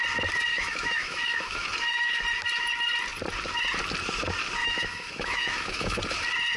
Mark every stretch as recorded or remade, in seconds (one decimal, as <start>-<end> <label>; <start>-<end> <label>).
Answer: 0.0-0.5 recorded; 0.5-2.2 remade; 2.2-4.6 recorded; 4.6-6.0 remade; 6.0-6.6 recorded